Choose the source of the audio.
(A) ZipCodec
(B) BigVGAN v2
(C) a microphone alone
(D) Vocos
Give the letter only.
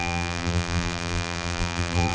B